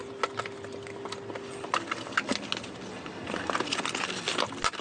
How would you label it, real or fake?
real